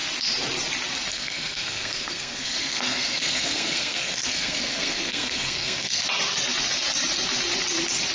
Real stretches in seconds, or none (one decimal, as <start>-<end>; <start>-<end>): 0.0-1.1; 6.0-8.1